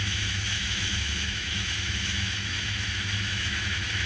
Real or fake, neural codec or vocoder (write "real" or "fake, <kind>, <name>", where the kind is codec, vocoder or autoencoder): fake, autoencoder, DAC-VAE